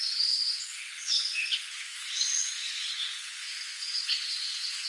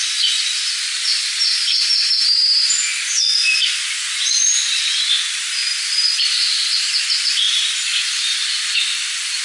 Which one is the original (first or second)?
second